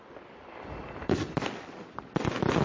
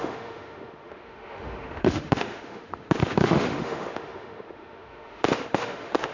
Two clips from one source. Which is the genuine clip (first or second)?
first